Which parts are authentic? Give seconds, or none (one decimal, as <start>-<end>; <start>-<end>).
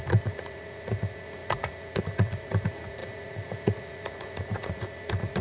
none